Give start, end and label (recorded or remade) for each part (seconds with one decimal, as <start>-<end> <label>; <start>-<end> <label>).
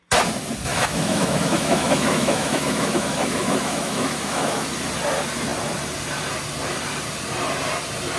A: 0.0-0.7 recorded; 0.7-4.7 remade; 4.7-8.2 recorded